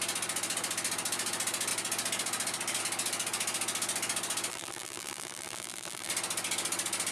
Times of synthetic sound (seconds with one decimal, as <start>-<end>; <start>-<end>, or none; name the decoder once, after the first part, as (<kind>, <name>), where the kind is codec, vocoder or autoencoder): 4.5-6.1 (vocoder, BigVGAN v2)